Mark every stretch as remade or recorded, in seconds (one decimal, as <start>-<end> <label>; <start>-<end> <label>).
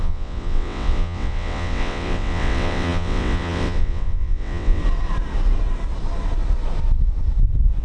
0.0-4.8 remade; 4.8-7.8 recorded